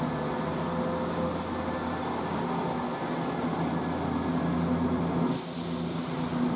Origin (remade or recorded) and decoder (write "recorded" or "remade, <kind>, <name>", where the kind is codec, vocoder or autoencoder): recorded